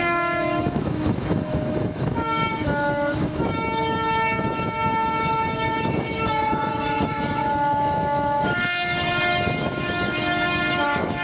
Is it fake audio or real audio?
fake